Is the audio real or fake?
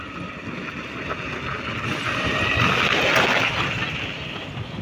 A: real